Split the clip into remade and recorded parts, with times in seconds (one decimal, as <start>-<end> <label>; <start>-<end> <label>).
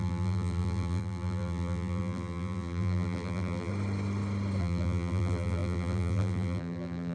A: 0.0-3.7 remade; 3.7-4.6 recorded; 4.6-7.1 remade